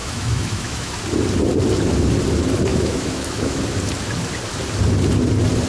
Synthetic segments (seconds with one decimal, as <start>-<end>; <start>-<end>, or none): 0.0-0.9; 2.7-3.6